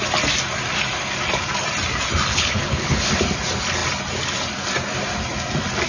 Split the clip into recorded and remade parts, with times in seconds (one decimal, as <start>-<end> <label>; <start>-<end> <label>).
0.0-2.3 recorded; 2.3-3.1 remade; 3.1-5.9 recorded